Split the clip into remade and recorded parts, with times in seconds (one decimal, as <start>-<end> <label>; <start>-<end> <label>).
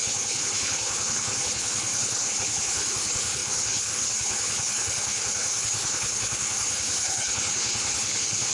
0.0-8.5 remade